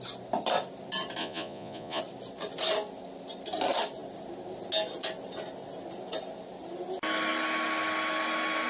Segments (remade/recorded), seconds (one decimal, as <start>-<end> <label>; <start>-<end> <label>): 0.0-1.2 recorded; 1.2-2.0 remade; 2.0-8.7 recorded